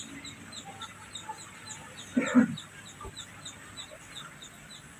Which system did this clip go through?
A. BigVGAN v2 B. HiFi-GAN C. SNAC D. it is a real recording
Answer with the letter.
D